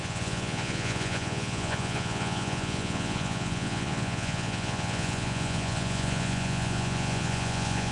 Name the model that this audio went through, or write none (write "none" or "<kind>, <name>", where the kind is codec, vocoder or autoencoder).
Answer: vocoder, Vocos